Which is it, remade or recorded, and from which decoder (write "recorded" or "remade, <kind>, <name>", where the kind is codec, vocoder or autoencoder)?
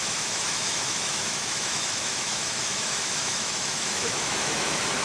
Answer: remade, autoencoder, DAC-VAE